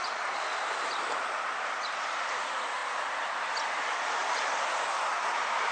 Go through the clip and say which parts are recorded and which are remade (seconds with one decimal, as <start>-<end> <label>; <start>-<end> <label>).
0.0-0.9 recorded; 0.9-5.7 remade